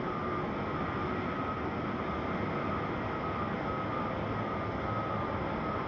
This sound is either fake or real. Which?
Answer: real